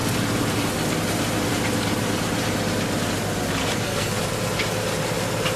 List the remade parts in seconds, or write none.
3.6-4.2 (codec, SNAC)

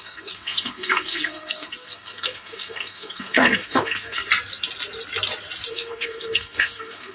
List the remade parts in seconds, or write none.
0.0-4.3 (codec, SNAC); 5.7-7.1

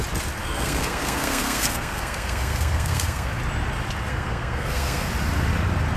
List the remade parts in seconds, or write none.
0.4-3.4 (codec, SNAC); 4.1-5.1

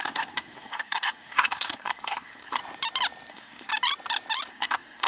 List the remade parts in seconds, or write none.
0.0-2.6 (codec, SNAC); 3.3-3.7; 4.5-5.1

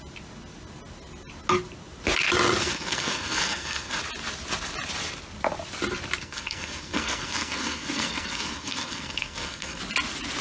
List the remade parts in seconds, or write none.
2.6-4.0 (codec, SNAC); 6.2-9.8

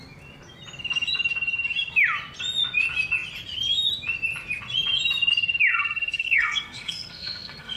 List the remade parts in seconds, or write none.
5.7-7.8 (codec, SNAC)